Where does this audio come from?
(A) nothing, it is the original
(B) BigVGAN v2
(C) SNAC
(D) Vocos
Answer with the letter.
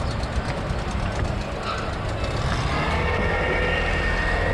A